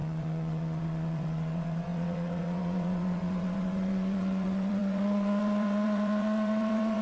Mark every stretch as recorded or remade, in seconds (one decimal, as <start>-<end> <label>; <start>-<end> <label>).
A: 0.0-7.0 remade